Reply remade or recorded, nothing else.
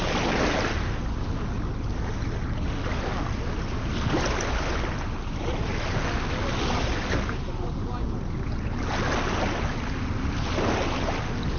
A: recorded